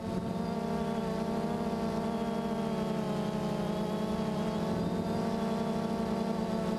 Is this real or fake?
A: real